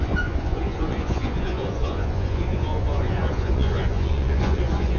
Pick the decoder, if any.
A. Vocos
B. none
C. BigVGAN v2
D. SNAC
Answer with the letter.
A